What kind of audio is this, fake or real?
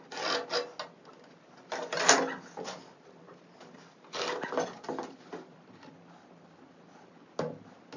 real